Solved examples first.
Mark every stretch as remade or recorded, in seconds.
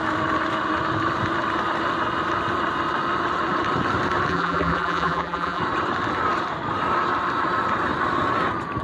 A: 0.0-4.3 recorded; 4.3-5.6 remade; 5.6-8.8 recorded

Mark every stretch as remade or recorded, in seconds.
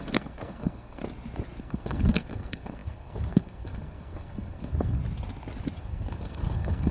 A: 0.0-1.0 remade; 1.0-1.6 recorded; 1.6-5.0 remade; 5.0-5.8 recorded; 5.8-6.9 remade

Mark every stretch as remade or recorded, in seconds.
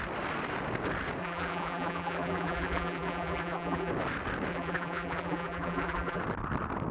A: 0.0-1.2 recorded; 1.2-3.9 remade; 3.9-4.5 recorded; 4.5-6.2 remade; 6.2-6.9 recorded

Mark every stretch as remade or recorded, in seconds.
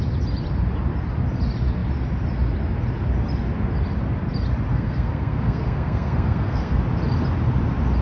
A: 0.0-4.7 recorded; 4.7-6.8 remade; 6.8-8.0 recorded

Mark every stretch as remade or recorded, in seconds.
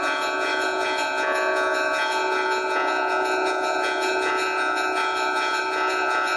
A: 0.0-6.4 remade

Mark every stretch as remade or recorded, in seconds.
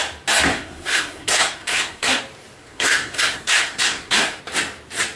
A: 0.0-0.5 recorded; 0.5-2.2 remade; 2.2-2.6 recorded; 2.6-4.4 remade; 4.4-5.2 recorded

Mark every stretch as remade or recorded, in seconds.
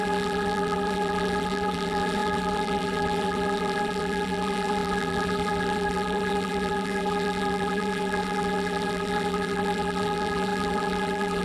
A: 0.0-11.4 remade